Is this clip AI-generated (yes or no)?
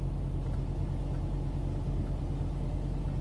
no